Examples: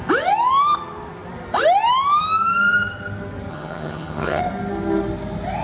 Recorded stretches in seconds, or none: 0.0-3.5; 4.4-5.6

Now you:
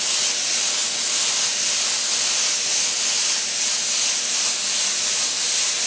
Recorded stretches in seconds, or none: 0.0-5.9

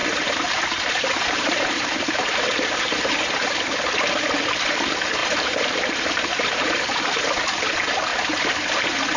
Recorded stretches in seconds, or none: 3.2-5.2; 7.3-8.1; 8.7-9.2